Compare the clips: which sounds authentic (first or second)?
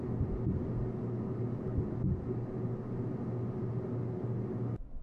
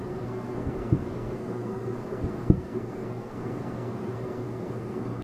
first